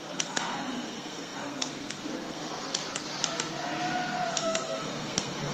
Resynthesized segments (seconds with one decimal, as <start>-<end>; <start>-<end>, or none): 0.0-2.8; 4.3-5.5